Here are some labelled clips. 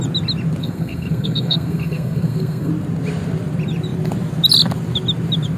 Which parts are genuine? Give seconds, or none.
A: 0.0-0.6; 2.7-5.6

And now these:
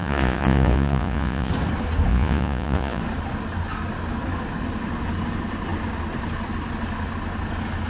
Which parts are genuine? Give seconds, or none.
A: 1.5-2.1; 3.0-7.9

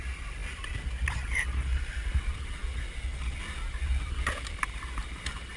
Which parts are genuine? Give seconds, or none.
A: 0.0-5.6

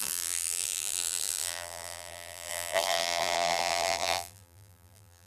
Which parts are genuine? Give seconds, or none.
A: none

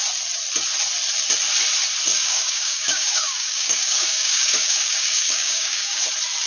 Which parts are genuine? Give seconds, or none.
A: 0.0-2.1; 6.0-6.5

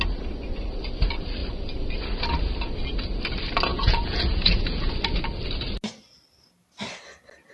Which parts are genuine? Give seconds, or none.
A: 0.0-3.7; 4.9-7.5